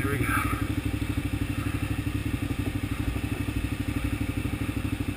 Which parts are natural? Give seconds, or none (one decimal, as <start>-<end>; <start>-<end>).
0.0-5.2